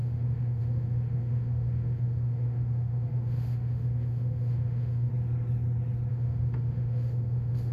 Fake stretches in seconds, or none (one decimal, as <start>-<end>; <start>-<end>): 0.0-5.1; 6.1-7.7